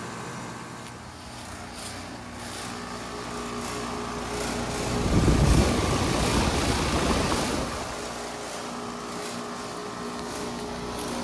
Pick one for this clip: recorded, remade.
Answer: recorded